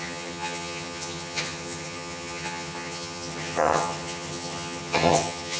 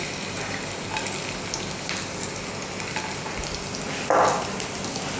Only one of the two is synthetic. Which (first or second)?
first